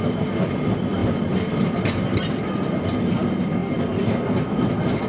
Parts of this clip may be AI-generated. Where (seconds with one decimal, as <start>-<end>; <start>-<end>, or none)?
none